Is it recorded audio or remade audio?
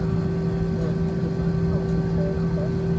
recorded